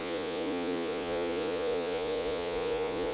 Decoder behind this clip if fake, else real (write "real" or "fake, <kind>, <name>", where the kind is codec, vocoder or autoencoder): fake, vocoder, Vocos